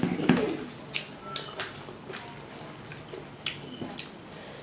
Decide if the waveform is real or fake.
real